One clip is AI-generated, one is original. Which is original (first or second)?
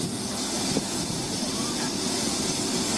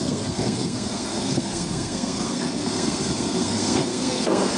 first